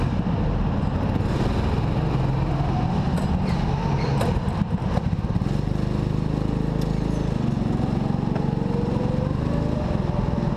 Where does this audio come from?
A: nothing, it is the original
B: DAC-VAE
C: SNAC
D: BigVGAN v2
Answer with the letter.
A